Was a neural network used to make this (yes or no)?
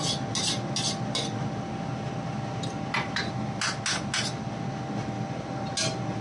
no